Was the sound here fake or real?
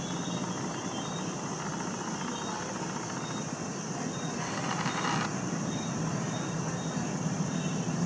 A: real